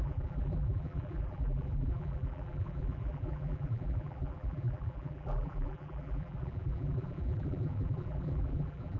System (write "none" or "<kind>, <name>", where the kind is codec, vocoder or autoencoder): vocoder, BigVGAN v2